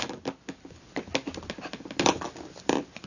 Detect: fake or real real